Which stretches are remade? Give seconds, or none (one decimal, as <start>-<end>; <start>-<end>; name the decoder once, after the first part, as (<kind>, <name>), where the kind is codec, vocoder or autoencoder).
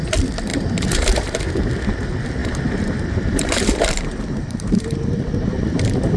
0.5-1.7 (vocoder, BigVGAN v2); 2.4-6.2